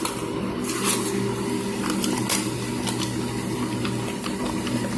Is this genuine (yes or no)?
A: yes